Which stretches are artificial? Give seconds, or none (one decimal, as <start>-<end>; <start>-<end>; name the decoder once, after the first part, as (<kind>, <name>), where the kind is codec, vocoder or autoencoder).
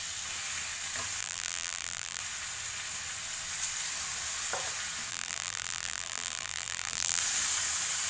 1.2-2.2 (vocoder, BigVGAN v2); 5.1-7.2